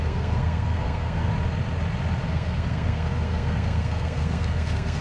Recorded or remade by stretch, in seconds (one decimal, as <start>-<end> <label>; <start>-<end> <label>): 0.0-1.3 remade; 1.3-2.3 recorded; 2.3-5.0 remade